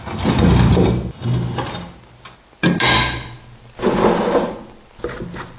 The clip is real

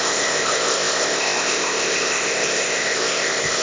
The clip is fake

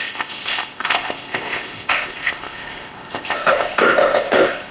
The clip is fake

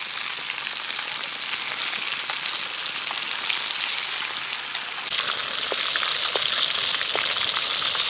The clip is real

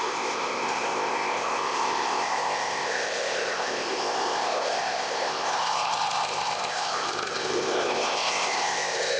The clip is fake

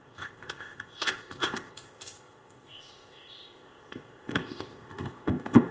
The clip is fake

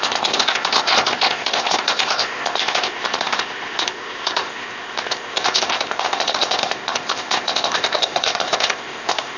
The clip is fake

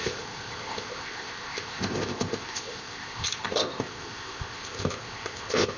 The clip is fake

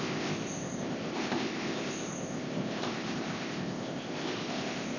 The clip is fake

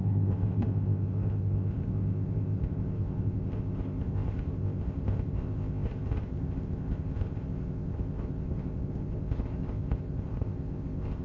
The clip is fake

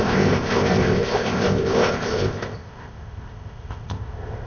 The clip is fake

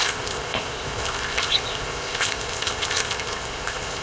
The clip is fake